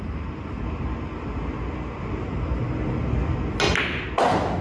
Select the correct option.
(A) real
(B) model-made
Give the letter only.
A